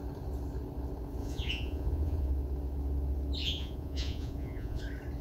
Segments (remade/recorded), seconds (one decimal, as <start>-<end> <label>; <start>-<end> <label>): 0.0-1.2 recorded; 1.2-2.3 remade; 2.3-3.4 recorded; 3.4-4.8 remade; 4.8-5.2 recorded